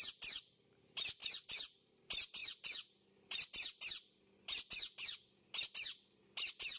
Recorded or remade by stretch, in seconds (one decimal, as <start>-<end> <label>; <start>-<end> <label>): 0.0-6.8 recorded